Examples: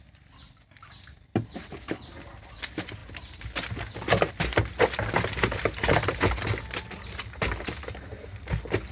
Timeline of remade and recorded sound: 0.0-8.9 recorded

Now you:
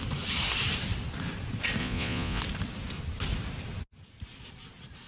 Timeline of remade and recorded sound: 0.0-1.8 recorded; 1.8-2.4 remade; 2.4-5.1 recorded